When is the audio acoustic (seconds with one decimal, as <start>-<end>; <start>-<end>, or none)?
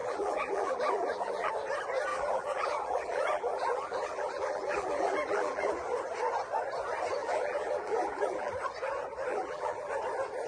1.5-2.1; 5.7-7.2; 8.5-9.3; 9.9-10.5